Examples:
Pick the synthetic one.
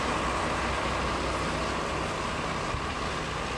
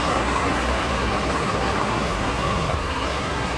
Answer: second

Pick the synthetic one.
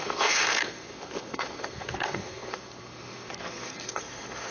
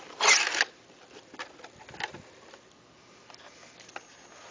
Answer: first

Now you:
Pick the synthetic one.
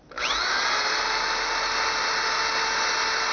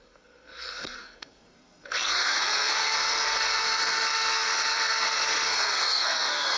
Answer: second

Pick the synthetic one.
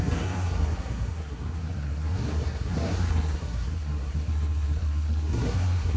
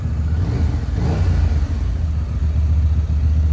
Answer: first